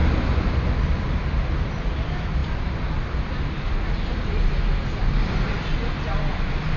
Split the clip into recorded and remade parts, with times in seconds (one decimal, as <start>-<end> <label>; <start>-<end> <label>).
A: 0.0-6.8 recorded